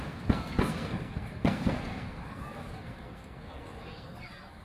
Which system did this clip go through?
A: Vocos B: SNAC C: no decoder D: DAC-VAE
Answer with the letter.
B